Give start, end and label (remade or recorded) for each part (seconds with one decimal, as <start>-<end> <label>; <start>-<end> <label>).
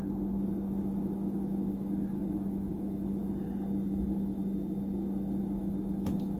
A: 0.0-0.8 recorded; 0.8-3.2 remade; 3.2-3.9 recorded; 3.9-4.4 remade; 4.4-5.4 recorded; 5.4-6.4 remade